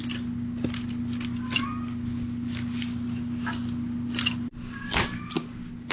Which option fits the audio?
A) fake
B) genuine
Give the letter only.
B